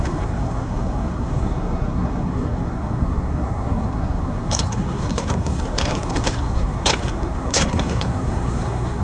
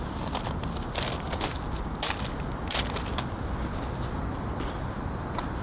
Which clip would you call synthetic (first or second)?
first